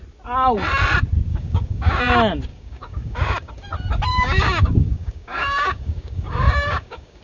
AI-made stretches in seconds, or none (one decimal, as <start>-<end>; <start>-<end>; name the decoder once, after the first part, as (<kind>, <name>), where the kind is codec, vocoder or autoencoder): 1.3-2.0 (codec, DAC); 2.5-3.5; 4.1-7.2